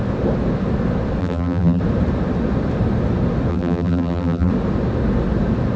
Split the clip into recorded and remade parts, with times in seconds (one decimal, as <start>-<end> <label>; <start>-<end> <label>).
0.0-1.2 recorded; 1.2-1.8 remade; 1.8-3.5 recorded; 3.5-4.5 remade; 4.5-5.8 recorded